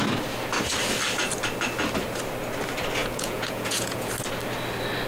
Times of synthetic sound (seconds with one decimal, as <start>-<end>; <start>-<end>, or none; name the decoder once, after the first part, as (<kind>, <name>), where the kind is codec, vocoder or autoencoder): 3.0-4.1 (vocoder, Vocos)